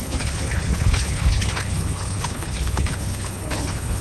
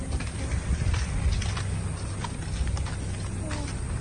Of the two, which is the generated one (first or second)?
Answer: first